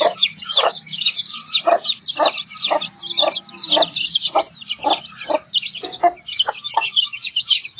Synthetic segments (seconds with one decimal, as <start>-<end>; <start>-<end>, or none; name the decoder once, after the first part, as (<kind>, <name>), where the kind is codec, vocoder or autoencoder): 0.0-1.4 (codec, DAC); 5.7-7.8